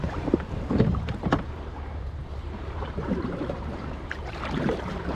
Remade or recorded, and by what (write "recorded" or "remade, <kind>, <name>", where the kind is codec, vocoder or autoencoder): remade, vocoder, BigVGAN v2